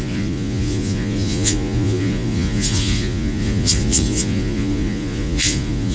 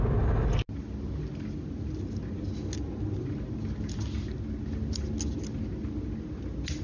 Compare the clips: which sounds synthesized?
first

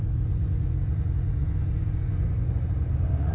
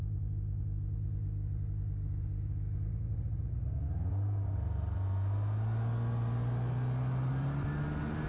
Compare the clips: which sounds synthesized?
first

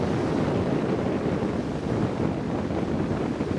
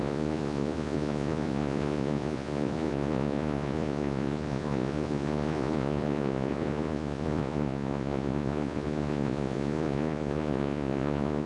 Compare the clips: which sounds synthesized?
second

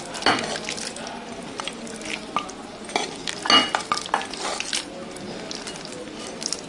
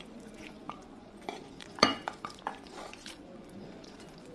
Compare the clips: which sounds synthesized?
second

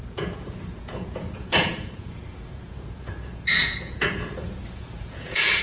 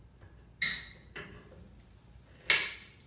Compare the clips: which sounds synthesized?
first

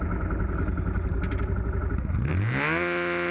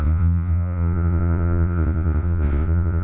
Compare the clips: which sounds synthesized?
second